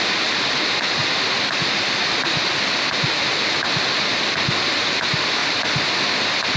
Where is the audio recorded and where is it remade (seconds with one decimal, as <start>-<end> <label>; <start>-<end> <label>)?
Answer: 0.0-6.6 recorded